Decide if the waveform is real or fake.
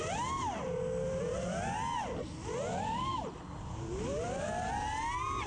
real